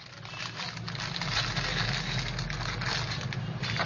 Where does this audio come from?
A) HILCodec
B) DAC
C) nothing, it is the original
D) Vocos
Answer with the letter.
C